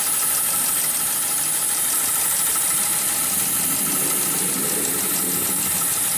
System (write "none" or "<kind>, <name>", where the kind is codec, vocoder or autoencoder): none